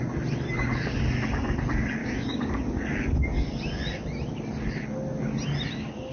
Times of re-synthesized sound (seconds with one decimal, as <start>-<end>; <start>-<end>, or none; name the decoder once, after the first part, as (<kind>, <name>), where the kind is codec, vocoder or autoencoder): 2.0-2.5 (codec, DAC)